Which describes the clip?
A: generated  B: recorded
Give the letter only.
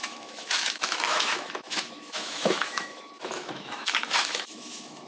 A